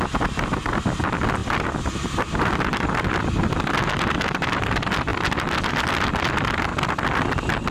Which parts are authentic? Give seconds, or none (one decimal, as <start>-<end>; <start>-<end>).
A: 0.0-7.7